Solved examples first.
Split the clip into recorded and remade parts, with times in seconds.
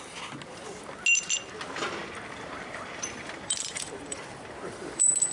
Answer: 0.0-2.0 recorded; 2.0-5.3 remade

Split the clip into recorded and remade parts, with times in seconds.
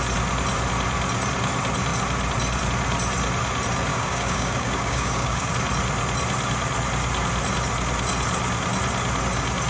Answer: 0.0-3.9 recorded; 3.9-5.5 remade; 5.5-9.7 recorded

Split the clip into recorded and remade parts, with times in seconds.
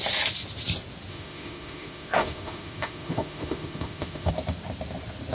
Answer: 0.0-1.1 recorded; 1.1-4.3 remade; 4.3-5.3 recorded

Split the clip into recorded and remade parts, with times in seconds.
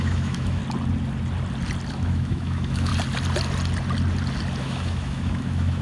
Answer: 0.0-0.6 remade; 0.6-1.9 recorded; 1.9-2.9 remade; 2.9-4.6 recorded; 4.6-5.8 remade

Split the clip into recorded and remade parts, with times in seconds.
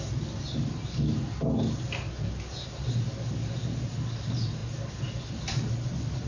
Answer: 0.0-6.3 recorded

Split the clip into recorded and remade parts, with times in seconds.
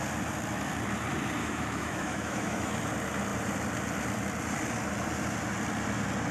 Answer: 0.0-1.4 recorded; 1.4-2.7 remade; 2.7-6.3 recorded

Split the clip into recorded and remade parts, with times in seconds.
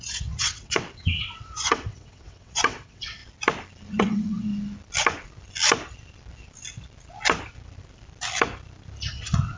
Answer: 0.0-3.2 remade; 3.2-3.9 recorded; 3.9-4.5 remade; 4.5-9.1 recorded; 9.1-9.6 remade